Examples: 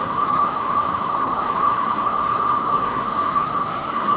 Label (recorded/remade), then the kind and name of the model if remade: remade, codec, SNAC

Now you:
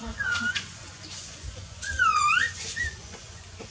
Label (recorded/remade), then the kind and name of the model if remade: remade, vocoder, Vocos